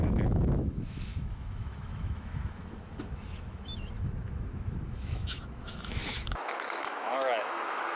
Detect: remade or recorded remade